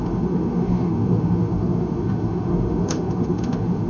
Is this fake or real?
fake